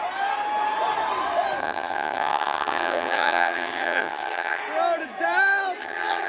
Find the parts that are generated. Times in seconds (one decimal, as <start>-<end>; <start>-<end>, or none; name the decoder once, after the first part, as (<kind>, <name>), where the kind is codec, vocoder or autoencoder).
1.6-4.6 (vocoder, HiFi-GAN); 5.8-6.3